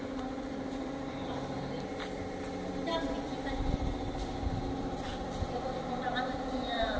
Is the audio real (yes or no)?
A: no